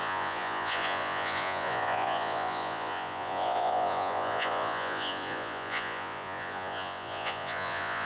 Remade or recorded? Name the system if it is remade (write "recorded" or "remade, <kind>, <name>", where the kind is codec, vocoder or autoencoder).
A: remade, vocoder, Vocos